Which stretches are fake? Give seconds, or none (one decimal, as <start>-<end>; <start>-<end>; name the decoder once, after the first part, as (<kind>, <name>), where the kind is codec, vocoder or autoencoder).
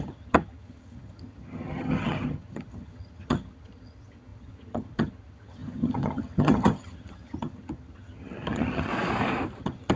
0.0-8.9 (vocoder, HiFi-GAN); 9.6-10.0